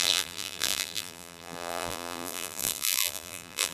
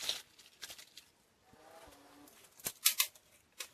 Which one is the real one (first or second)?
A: second